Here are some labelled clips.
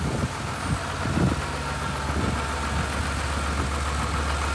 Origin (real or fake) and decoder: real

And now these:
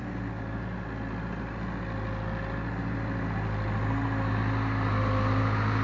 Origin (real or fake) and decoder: real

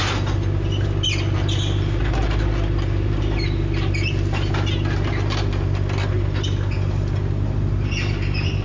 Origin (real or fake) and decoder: real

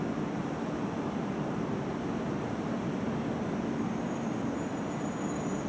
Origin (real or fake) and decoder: real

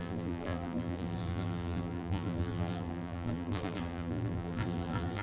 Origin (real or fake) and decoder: fake, vocoder, BigVGAN v2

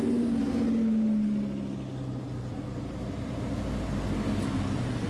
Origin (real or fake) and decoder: real